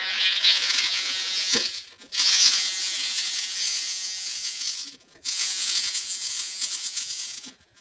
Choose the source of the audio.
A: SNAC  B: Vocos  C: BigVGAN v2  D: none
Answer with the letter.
B